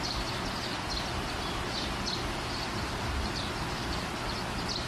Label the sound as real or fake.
real